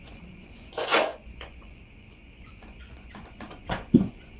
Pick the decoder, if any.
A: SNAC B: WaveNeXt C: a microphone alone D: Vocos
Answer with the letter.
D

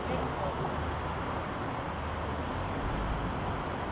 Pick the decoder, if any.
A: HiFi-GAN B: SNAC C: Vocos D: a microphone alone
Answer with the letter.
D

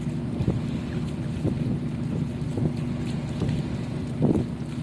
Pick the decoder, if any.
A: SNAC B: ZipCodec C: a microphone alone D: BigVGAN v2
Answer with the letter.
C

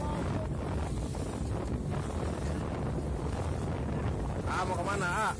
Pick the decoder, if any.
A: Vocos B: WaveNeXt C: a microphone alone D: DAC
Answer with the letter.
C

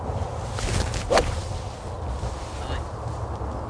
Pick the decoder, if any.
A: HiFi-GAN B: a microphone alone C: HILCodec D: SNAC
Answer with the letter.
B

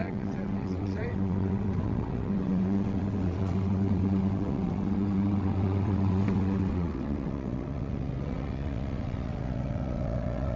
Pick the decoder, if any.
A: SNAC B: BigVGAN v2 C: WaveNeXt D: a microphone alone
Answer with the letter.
C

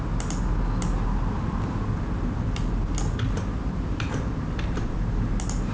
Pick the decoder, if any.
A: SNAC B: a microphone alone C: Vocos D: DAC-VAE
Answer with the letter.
B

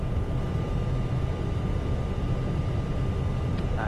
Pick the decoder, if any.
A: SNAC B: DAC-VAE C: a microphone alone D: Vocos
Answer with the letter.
C